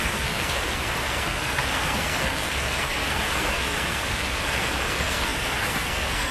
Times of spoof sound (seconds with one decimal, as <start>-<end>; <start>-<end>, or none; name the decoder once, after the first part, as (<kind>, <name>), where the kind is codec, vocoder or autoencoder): 0.0-6.3 (codec, SNAC)